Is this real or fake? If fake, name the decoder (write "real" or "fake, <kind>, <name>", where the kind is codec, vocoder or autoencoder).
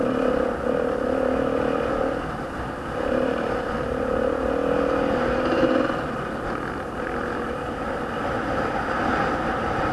real